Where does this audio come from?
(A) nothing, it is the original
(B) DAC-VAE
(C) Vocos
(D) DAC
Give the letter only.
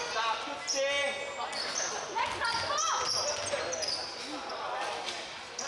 A